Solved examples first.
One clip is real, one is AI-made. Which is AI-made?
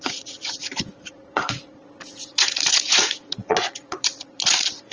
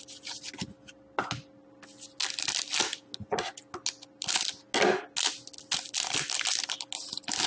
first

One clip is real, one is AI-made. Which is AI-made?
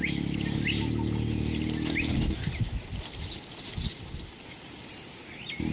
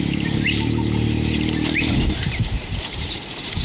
second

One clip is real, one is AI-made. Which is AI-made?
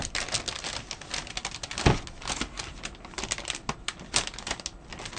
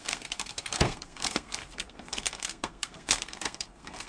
second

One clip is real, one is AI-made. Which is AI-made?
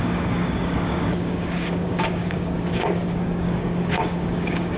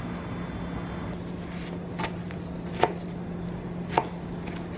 first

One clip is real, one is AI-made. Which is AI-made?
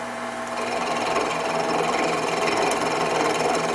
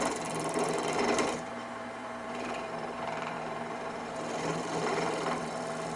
second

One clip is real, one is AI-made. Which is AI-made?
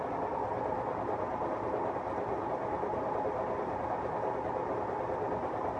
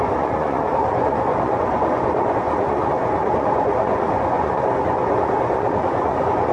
second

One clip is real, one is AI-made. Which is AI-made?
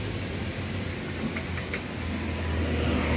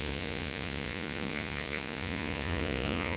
second